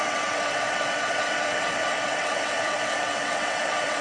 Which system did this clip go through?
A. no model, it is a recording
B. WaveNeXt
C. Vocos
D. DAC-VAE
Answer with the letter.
B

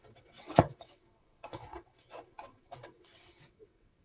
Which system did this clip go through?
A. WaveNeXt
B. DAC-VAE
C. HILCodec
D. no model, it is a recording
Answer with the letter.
A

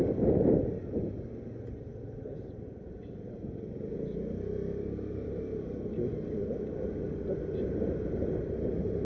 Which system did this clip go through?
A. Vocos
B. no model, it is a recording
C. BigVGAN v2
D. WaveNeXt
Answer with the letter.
B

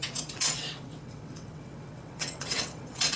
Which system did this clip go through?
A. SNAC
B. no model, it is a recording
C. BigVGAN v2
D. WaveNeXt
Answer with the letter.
D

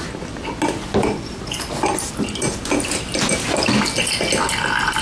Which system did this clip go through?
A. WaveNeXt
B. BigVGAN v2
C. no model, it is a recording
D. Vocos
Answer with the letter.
C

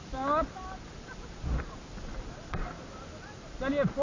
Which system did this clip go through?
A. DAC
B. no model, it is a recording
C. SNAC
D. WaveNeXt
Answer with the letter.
B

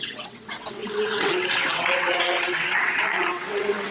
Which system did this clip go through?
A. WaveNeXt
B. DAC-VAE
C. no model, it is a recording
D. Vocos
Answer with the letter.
A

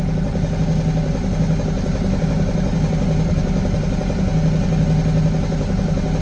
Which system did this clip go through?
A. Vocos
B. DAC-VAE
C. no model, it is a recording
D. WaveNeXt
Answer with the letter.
C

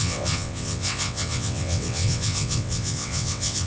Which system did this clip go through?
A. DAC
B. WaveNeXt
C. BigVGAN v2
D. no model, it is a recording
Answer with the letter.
B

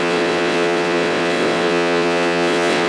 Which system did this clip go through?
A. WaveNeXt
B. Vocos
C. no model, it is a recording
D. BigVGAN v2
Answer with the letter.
A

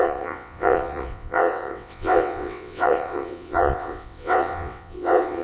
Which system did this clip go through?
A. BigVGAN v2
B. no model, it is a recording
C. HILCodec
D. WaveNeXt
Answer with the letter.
D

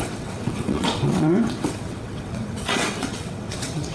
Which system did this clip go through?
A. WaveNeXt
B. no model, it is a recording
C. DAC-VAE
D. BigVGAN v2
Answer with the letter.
A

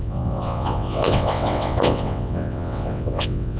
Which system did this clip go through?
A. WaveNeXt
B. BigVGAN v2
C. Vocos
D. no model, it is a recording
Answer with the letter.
A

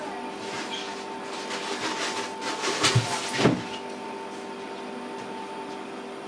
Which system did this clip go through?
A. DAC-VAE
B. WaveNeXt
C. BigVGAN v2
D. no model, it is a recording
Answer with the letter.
D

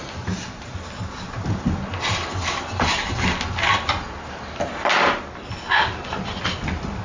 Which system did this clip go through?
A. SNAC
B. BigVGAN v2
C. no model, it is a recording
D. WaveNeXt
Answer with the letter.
C